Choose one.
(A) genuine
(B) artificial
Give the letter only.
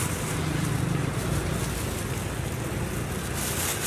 A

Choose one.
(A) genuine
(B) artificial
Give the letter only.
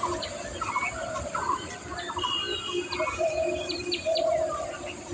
A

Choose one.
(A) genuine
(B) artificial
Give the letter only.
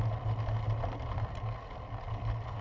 A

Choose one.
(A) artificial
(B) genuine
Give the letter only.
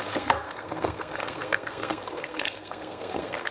A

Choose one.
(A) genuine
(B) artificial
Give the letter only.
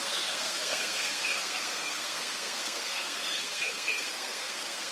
B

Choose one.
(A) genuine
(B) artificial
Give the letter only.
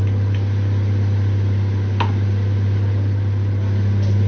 A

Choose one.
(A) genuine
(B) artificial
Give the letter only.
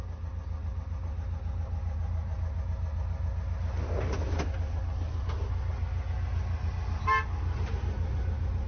A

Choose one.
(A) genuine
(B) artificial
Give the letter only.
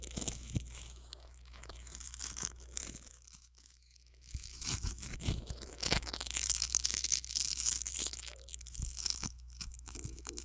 B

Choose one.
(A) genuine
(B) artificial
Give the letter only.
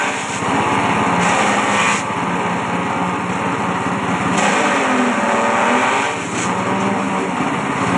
A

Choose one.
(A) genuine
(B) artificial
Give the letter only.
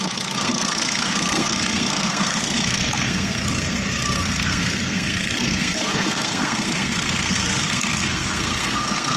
B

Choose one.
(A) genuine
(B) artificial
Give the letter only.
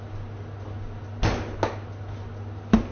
A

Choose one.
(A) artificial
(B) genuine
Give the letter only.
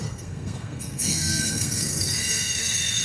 A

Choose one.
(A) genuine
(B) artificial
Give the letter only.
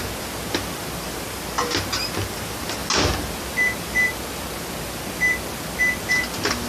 A